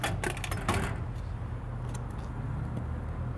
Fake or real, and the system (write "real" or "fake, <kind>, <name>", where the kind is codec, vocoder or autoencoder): real